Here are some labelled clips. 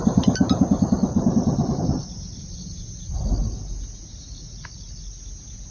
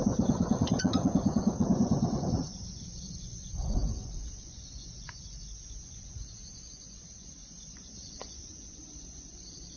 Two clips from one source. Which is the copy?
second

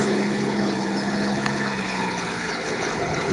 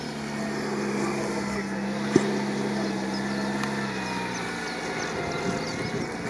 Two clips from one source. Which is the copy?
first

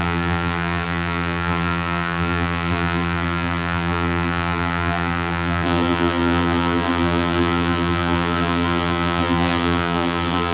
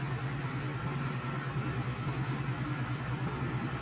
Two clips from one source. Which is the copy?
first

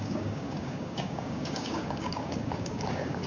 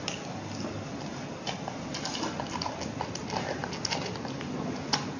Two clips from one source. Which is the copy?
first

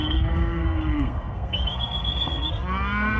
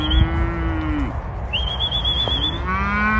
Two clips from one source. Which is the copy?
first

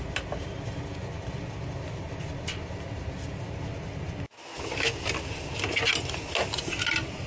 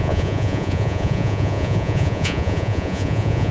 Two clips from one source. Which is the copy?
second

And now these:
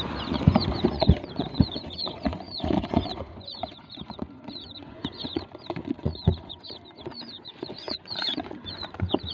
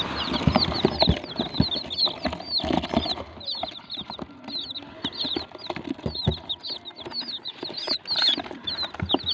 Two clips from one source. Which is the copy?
first